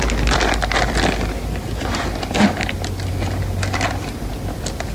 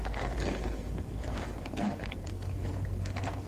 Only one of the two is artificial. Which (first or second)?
second